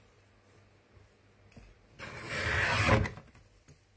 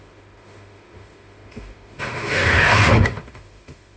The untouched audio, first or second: first